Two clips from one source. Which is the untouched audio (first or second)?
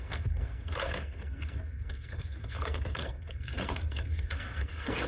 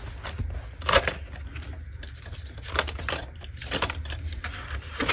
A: second